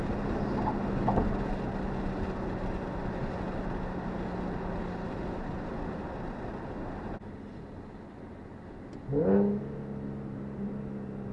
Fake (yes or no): no